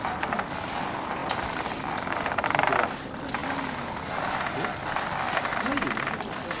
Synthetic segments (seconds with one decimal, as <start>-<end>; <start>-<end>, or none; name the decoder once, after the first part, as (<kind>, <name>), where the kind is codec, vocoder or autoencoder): none